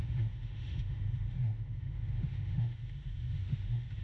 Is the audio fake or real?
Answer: fake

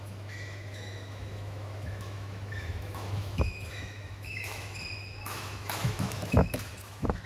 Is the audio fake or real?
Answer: fake